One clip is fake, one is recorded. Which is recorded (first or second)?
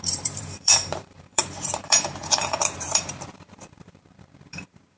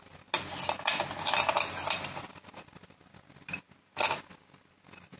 second